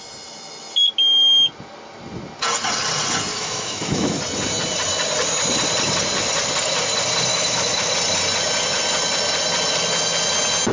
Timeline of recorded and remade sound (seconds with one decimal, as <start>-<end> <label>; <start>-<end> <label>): 0.0-3.3 recorded; 3.3-4.2 remade; 4.2-7.3 recorded; 7.3-7.9 remade; 7.9-10.7 recorded